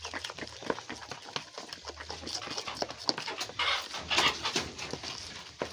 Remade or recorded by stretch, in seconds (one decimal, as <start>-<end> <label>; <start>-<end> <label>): 0.0-5.7 recorded